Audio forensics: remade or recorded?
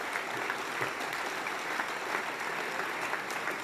remade